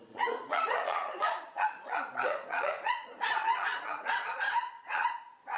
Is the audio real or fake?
fake